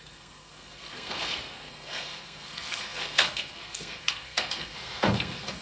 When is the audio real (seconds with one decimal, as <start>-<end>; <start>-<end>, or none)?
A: none